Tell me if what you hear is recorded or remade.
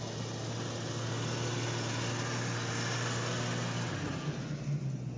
recorded